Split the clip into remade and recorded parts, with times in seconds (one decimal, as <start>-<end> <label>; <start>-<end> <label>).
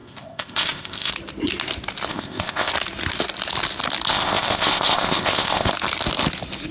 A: 0.0-1.1 remade; 1.1-2.1 recorded; 2.1-2.7 remade; 2.7-4.1 recorded; 4.1-5.7 remade; 5.7-6.7 recorded